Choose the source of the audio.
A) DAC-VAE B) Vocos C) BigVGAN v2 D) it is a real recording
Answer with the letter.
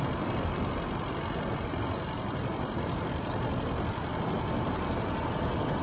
D